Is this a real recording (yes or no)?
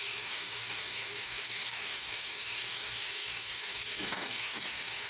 no